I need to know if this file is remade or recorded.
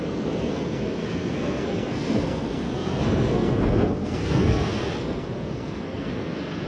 remade